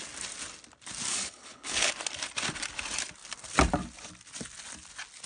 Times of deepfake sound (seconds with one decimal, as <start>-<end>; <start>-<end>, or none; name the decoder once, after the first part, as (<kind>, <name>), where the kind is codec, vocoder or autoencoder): 1.1-1.9 (codec, HILCodec)

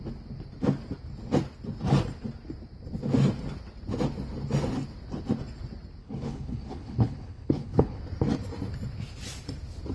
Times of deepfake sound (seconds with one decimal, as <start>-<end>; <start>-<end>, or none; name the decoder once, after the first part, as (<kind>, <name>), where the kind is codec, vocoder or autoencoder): 6.0-8.0 (codec, HILCodec)